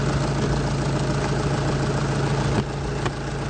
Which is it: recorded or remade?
recorded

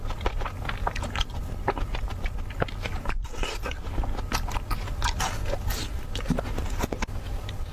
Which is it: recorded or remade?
remade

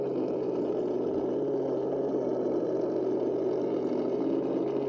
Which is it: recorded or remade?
recorded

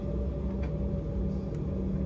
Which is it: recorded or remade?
recorded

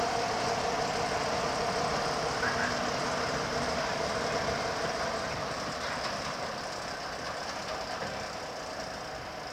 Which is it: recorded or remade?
recorded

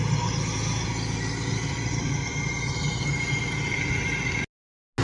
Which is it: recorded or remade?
recorded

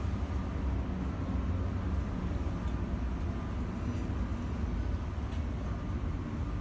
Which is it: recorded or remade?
recorded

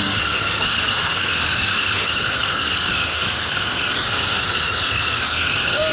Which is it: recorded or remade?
remade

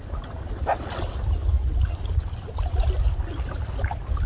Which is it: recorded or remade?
recorded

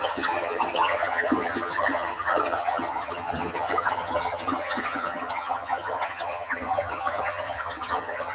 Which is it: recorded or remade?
remade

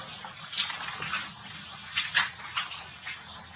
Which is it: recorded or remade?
recorded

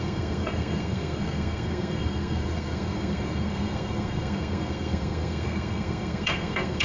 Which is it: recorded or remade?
remade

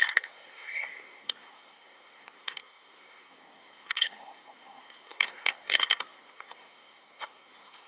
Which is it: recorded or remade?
remade